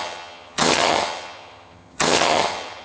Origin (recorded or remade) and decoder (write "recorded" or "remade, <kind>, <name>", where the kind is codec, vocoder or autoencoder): remade, vocoder, HiFi-GAN